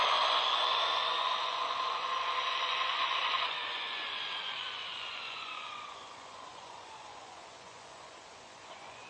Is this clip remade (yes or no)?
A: yes